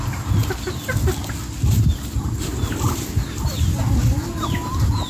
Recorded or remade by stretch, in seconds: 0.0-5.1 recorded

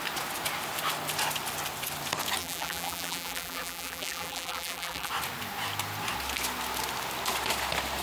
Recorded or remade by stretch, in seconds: 0.0-2.4 recorded; 2.4-5.1 remade; 5.1-8.0 recorded